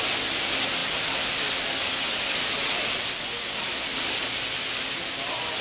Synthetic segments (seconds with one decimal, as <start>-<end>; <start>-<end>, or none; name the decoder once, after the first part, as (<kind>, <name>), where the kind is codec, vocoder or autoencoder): none